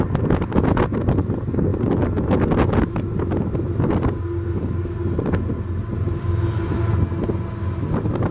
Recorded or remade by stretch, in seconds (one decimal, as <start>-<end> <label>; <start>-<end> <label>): 0.0-8.3 recorded